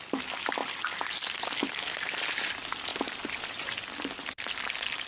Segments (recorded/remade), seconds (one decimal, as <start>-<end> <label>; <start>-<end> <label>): 0.0-5.1 recorded